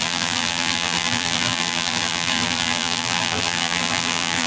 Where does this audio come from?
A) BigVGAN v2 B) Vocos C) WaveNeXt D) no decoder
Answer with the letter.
A